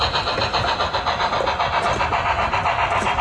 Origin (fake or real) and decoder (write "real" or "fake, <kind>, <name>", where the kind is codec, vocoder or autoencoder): real